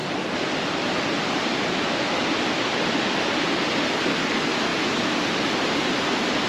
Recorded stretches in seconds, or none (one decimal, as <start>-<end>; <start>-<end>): 0.0-6.5